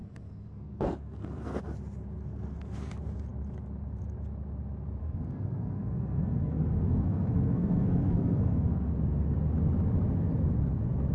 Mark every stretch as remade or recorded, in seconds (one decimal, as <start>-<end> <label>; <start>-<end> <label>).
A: 0.0-1.6 remade; 1.6-2.3 recorded; 2.3-2.9 remade; 2.9-5.0 recorded; 5.0-8.9 remade; 8.9-11.1 recorded